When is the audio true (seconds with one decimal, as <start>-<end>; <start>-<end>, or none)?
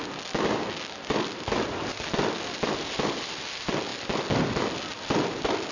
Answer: 0.0-5.7